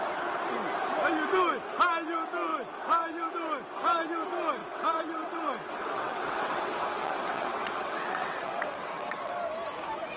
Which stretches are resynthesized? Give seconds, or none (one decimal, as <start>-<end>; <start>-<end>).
4.6-9.3